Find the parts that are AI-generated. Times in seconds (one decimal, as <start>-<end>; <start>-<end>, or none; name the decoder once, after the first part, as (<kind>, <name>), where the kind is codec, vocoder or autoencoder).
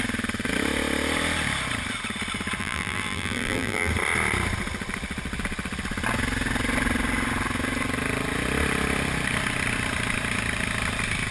2.6-3.9 (vocoder, BigVGAN v2)